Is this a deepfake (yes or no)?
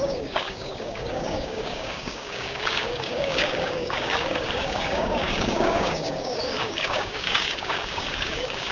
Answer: yes